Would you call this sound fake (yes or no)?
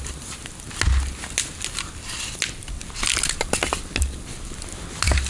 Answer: no